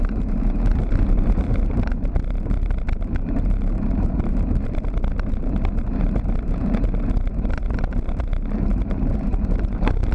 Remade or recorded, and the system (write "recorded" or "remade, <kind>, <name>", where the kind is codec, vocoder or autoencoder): remade, vocoder, BigVGAN v2